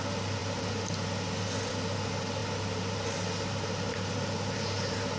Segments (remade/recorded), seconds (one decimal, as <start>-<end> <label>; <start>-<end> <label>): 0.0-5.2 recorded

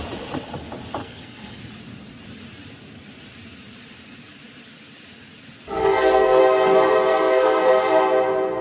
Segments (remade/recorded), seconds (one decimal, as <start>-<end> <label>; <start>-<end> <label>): 0.0-1.0 recorded; 1.0-1.6 remade; 1.6-5.8 recorded; 5.8-6.4 remade; 6.4-7.1 recorded; 7.1-7.7 remade; 7.7-8.6 recorded

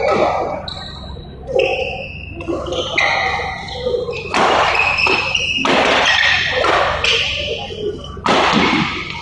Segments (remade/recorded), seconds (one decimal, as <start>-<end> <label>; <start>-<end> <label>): 0.0-9.2 recorded